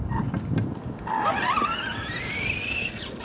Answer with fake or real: real